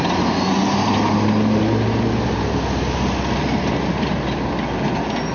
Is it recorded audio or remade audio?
recorded